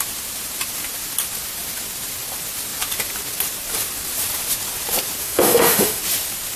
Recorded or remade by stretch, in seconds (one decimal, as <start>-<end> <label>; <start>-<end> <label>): 0.0-5.2 recorded; 5.2-6.0 remade; 6.0-6.6 recorded